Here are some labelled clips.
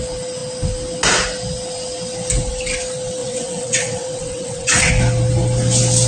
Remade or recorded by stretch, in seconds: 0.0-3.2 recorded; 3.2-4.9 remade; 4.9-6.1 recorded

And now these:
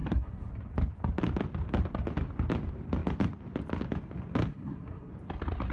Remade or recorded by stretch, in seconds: 0.0-0.5 remade; 0.5-4.5 recorded; 4.5-5.1 remade; 5.1-5.7 recorded

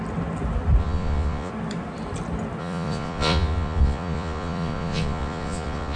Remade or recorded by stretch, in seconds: 0.0-0.8 recorded; 0.8-1.5 remade; 1.5-2.6 recorded; 2.6-6.0 remade

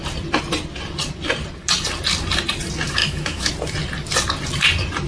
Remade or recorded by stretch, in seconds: 0.0-3.0 recorded; 3.0-3.5 remade; 3.5-5.1 recorded

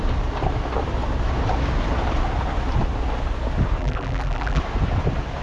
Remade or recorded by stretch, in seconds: 0.0-3.8 recorded; 3.8-4.6 remade; 4.6-5.4 recorded

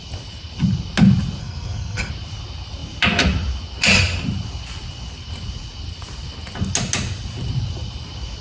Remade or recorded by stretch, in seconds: 0.0-1.4 recorded; 1.4-2.1 remade; 2.1-8.4 recorded

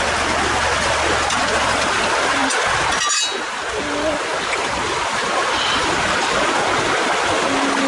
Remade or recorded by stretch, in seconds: 0.0-4.3 recorded; 4.3-7.0 remade; 7.0-7.9 recorded

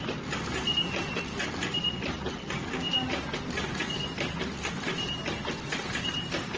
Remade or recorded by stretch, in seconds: 0.0-6.6 recorded